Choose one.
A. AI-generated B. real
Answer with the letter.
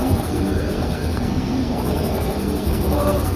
A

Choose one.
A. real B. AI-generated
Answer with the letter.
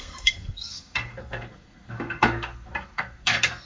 B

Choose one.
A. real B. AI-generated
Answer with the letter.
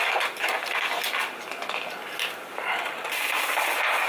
A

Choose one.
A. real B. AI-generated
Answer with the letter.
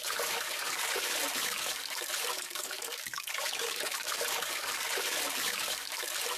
B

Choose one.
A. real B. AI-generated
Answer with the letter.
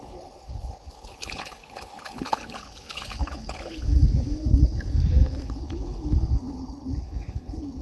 B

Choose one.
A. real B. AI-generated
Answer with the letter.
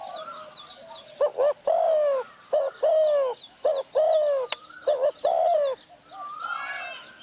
A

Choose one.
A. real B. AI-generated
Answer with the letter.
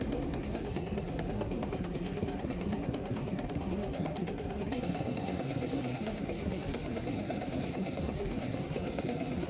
B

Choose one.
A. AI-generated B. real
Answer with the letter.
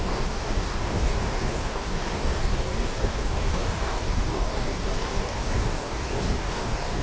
A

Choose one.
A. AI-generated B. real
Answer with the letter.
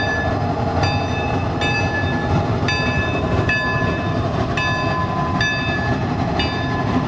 B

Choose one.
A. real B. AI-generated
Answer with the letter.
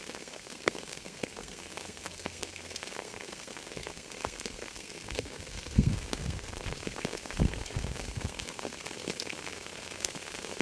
B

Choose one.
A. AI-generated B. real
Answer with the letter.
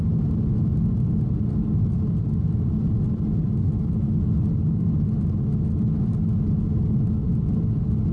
B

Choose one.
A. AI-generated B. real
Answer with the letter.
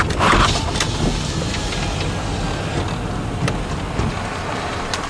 B